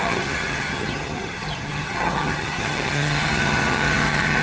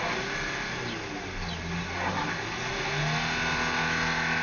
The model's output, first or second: first